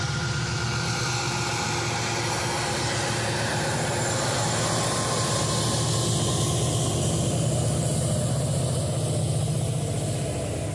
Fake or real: real